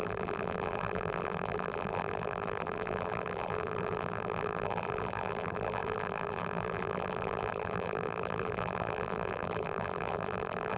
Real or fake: fake